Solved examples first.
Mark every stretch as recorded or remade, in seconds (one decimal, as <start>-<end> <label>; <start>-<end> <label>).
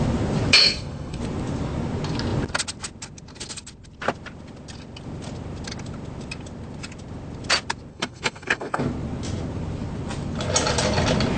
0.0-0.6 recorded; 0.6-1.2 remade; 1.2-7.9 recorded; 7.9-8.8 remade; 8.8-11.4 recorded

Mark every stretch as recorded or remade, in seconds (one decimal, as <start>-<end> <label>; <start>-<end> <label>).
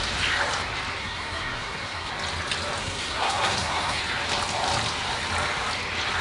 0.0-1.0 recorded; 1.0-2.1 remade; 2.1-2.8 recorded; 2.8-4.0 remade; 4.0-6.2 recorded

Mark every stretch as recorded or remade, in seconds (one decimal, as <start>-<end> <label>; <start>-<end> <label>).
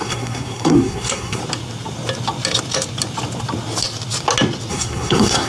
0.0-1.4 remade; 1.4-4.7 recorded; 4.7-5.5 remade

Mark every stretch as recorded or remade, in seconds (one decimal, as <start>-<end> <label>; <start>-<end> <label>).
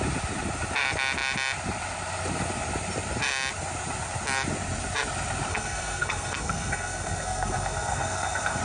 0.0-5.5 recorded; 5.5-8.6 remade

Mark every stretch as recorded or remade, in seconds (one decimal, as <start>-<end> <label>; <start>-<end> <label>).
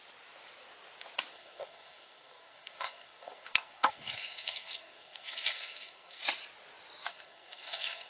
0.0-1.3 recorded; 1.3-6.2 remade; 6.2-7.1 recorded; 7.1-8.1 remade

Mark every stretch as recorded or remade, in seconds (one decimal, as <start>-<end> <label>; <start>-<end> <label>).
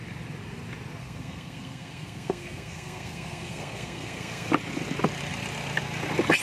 0.0-1.0 recorded; 1.0-4.5 remade; 4.5-6.4 recorded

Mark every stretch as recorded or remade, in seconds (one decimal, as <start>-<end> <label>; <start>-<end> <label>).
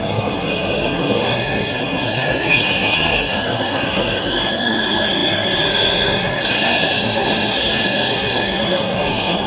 0.0-9.5 remade